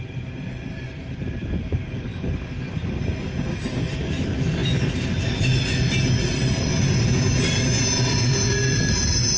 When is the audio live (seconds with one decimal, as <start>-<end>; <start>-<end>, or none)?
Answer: 0.0-9.4